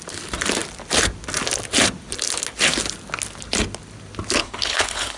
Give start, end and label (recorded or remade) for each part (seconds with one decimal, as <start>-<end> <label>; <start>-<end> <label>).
0.0-4.4 recorded; 4.4-5.2 remade